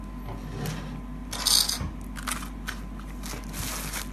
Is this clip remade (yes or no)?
no